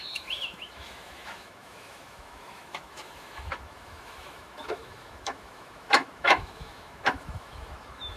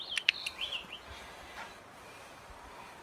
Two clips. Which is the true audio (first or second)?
second